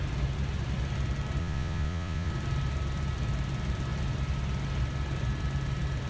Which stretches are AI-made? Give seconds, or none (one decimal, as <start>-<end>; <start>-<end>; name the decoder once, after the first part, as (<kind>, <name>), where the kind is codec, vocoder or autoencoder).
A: 1.4-2.3 (vocoder, Vocos)